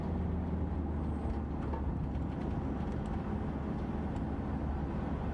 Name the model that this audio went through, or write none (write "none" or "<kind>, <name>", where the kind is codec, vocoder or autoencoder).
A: none